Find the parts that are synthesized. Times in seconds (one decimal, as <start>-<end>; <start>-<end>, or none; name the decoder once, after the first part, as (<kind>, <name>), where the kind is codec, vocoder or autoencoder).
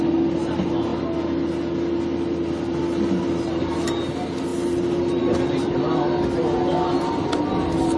none